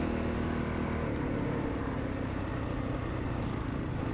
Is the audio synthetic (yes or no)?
no